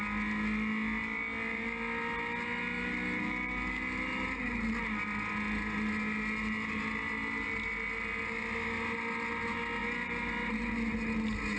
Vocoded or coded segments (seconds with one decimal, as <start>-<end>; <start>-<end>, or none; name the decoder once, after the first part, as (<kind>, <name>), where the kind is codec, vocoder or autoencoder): none